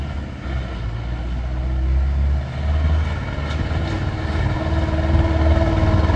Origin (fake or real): real